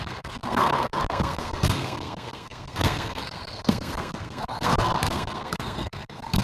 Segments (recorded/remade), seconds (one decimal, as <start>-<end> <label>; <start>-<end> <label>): 0.0-6.4 remade